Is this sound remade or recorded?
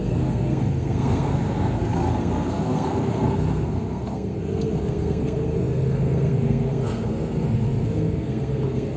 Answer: remade